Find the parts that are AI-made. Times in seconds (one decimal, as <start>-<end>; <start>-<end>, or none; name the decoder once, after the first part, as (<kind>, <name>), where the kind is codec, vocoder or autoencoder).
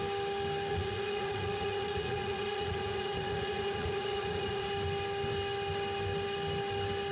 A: 0.7-4.7 (vocoder, Vocos)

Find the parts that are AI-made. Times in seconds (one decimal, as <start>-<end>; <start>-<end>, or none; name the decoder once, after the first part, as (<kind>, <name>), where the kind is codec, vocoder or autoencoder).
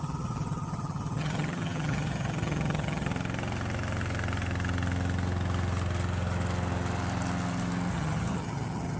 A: 0.0-3.1 (vocoder, HiFi-GAN); 7.9-9.0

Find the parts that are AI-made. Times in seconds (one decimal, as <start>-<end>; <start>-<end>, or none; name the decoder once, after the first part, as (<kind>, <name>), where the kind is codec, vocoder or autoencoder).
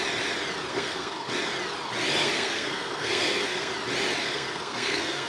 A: 0.7-1.3 (codec, SNAC); 2.2-3.7; 4.2-5.3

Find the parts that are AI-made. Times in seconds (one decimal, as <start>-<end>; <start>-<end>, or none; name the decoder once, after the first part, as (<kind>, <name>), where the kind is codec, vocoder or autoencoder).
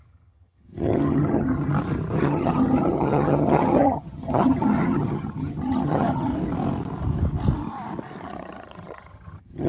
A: 0.0-1.7 (vocoder, HiFi-GAN); 2.2-6.3; 8.2-9.7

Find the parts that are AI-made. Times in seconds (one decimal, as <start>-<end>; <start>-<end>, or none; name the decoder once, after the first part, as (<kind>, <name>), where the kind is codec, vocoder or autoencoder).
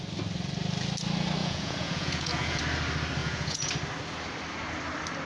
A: 1.4-2.6 (vocoder, Vocos); 3.2-3.7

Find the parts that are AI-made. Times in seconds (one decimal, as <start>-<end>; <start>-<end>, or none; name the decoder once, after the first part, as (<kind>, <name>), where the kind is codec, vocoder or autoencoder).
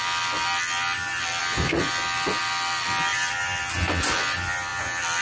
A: 1.4-1.9 (vocoder, BigVGAN v2); 3.1-3.6